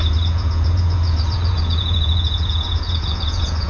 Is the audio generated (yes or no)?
yes